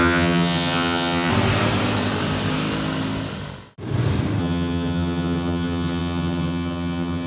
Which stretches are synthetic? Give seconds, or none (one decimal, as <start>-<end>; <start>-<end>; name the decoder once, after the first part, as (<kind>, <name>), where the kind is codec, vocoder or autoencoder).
0.0-1.3 (vocoder, HiFi-GAN); 4.4-7.3